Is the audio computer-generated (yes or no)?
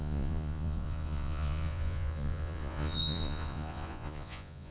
yes